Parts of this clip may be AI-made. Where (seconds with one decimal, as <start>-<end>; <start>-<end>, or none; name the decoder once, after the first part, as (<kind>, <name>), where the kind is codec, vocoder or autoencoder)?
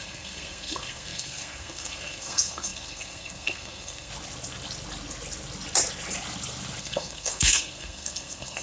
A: 0.0-4.1 (codec, SNAC); 6.8-8.6